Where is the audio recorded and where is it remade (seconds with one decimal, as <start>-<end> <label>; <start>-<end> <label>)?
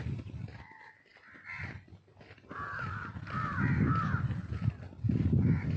0.0-5.8 recorded